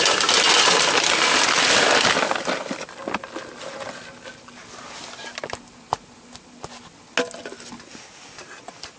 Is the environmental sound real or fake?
real